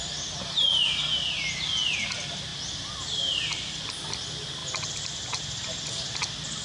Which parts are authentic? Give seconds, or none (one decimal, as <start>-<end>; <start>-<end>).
0.0-6.6

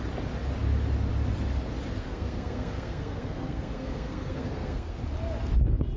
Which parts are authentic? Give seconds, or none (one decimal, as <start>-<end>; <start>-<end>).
0.0-2.0; 5.0-6.0

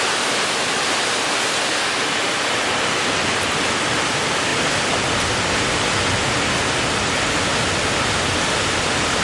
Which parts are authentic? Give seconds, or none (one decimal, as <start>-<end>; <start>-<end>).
0.0-9.2

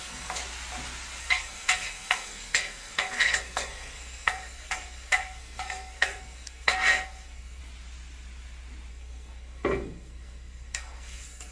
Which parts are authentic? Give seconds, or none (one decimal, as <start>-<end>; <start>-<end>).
0.4-1.2; 7.6-8.9

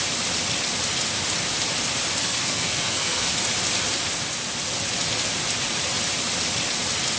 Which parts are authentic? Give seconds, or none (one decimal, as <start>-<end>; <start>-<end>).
0.0-2.2; 3.3-7.2

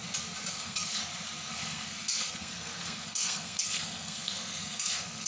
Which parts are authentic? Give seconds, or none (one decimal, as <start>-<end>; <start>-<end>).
0.0-0.5; 1.0-1.5

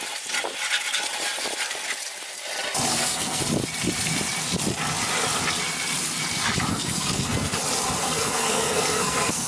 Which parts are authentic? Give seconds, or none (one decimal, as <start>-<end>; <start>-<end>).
0.0-2.9; 3.4-6.7; 7.6-8.0